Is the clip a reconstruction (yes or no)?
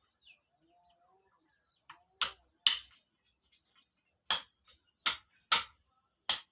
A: no